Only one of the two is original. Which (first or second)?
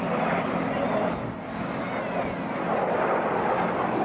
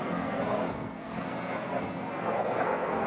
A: first